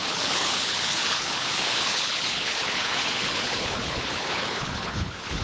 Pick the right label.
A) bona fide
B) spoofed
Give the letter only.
B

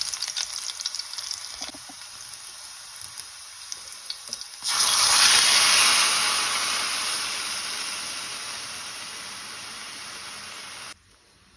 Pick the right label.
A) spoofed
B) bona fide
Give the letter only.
B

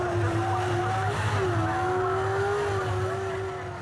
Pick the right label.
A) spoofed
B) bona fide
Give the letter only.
B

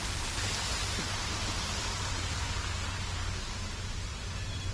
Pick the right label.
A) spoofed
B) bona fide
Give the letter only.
B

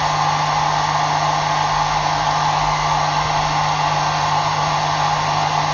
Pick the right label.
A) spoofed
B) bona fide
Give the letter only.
B